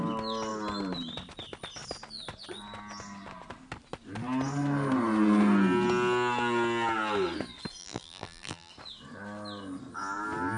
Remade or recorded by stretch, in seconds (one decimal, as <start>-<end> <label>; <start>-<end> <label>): 0.0-7.8 recorded; 7.8-8.7 remade; 8.7-10.6 recorded

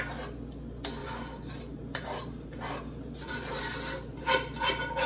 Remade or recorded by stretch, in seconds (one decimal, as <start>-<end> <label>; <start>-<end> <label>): 0.0-1.0 recorded; 1.0-3.6 remade; 3.6-4.1 recorded; 4.1-5.1 remade

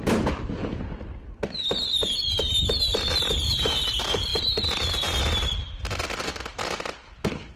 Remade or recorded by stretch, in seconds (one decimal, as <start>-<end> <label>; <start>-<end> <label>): 0.0-0.6 remade; 0.6-1.4 recorded; 1.4-4.3 remade; 4.3-5.2 recorded; 5.2-7.6 remade

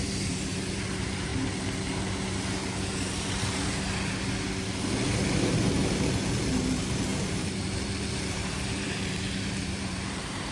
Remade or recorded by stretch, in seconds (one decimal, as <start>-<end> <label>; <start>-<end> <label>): 0.0-1.3 remade; 1.3-6.4 recorded; 6.4-10.5 remade

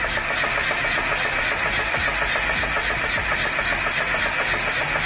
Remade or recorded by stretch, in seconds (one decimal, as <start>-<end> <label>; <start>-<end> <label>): 0.0-1.4 remade; 1.4-1.9 recorded; 1.9-4.2 remade; 4.2-5.1 recorded

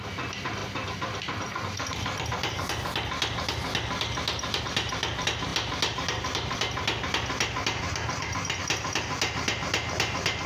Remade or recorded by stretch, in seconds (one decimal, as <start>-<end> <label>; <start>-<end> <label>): 0.0-10.5 recorded